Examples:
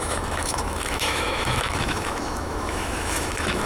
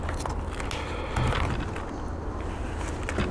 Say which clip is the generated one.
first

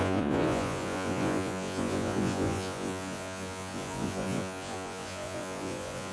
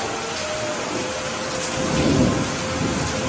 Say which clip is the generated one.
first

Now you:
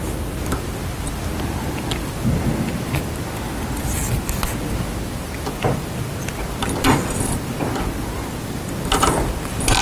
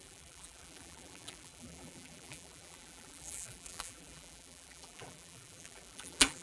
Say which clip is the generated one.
second